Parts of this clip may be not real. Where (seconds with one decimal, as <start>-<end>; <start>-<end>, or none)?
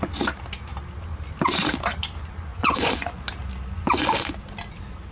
2.5-3.2